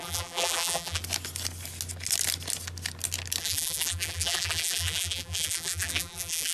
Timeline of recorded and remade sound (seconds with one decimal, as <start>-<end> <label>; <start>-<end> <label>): 0.0-1.0 remade; 1.0-3.4 recorded; 3.4-6.5 remade